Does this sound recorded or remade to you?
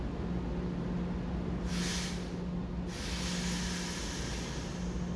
recorded